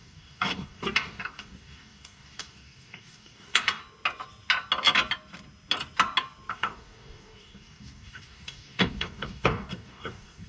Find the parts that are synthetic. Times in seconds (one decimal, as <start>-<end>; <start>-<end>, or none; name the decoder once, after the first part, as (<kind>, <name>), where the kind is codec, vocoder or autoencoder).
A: 0.0-3.8 (codec, DAC); 6.5-10.5